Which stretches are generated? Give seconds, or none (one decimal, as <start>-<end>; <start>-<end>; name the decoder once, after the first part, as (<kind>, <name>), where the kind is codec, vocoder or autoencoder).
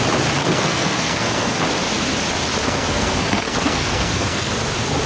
0.4-1.6 (codec, SNAC); 2.6-4.5